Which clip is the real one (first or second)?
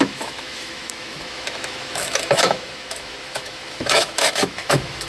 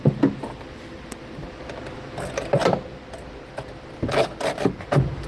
second